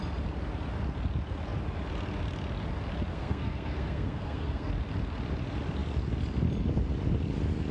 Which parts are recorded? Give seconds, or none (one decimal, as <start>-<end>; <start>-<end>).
0.0-3.1; 4.7-7.7